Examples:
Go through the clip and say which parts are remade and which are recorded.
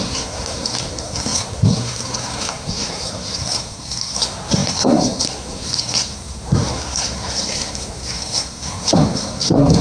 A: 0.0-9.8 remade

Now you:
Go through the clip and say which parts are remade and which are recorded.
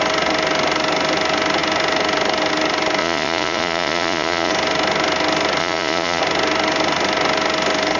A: 0.0-3.0 recorded; 3.0-4.5 remade; 4.5-5.6 recorded; 5.6-6.2 remade; 6.2-8.0 recorded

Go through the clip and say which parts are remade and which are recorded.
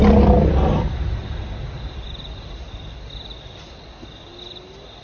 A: 0.0-5.0 recorded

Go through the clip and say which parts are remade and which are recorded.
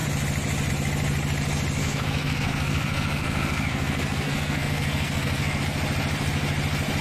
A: 0.0-1.8 recorded; 1.8-5.6 remade; 5.6-7.0 recorded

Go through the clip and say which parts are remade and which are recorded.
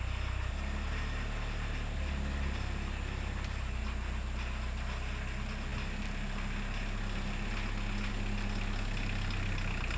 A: 0.0-10.0 recorded